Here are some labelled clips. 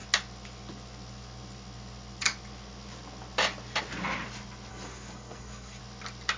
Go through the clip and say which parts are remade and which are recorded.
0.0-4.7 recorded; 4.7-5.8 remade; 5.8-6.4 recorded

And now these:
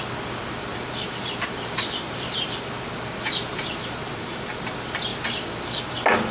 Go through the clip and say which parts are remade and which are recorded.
0.0-0.7 recorded; 0.7-4.5 remade; 4.5-5.1 recorded; 5.1-5.8 remade; 5.8-6.3 recorded

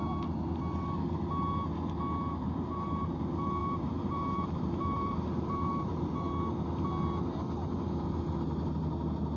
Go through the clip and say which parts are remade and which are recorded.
0.0-2.4 recorded; 2.4-3.2 remade; 3.2-3.6 recorded; 3.6-5.9 remade; 5.9-9.4 recorded

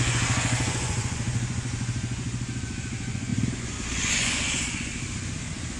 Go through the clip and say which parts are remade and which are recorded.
0.0-4.9 remade; 4.9-5.8 recorded

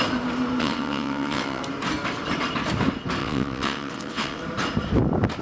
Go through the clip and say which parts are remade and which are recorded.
0.0-0.6 recorded; 0.6-1.6 remade; 1.6-3.2 recorded; 3.2-4.4 remade; 4.4-5.4 recorded